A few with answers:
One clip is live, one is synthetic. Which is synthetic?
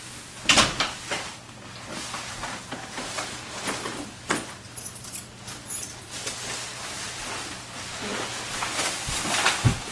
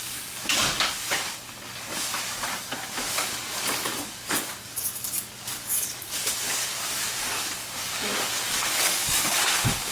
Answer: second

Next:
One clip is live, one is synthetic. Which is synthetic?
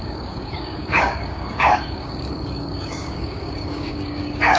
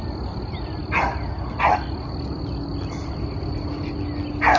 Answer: first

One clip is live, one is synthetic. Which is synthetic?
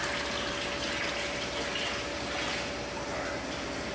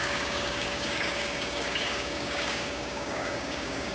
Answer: second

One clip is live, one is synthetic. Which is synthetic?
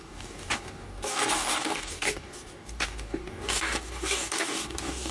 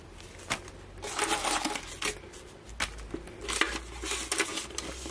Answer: first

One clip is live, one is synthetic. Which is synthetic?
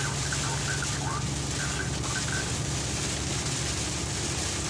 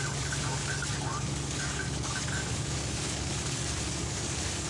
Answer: second